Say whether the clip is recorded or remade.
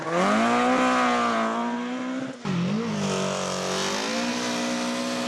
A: recorded